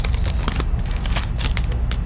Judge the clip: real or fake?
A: real